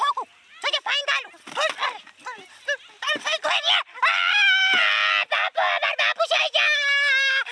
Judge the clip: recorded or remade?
recorded